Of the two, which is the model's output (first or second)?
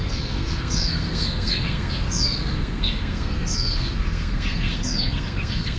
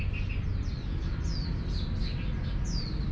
first